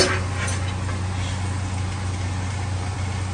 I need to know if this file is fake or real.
real